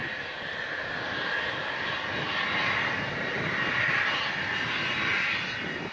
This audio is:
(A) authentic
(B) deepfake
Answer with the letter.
A